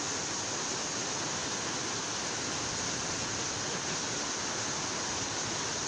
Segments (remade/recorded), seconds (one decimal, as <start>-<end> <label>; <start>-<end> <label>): 0.0-5.9 recorded